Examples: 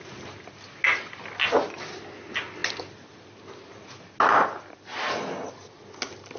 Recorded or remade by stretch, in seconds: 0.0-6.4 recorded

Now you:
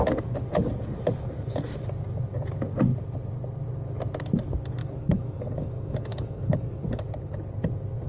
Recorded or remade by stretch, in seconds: 0.0-4.8 recorded; 4.8-6.8 remade; 6.8-8.1 recorded

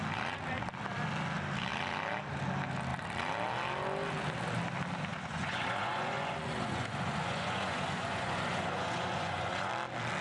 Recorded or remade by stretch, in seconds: 0.0-5.1 recorded; 5.1-9.7 remade; 9.7-10.2 recorded

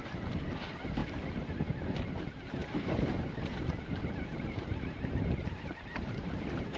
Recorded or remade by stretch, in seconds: 0.0-2.6 recorded; 2.6-6.8 remade

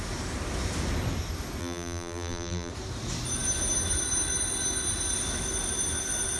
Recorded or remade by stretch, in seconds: 0.0-1.6 recorded; 1.6-2.7 remade; 2.7-6.4 recorded

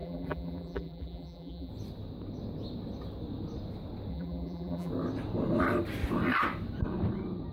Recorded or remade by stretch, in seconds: 0.0-1.7 remade; 1.7-4.1 recorded; 4.1-4.9 remade; 4.9-7.5 recorded